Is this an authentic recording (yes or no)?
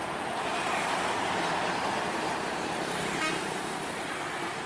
no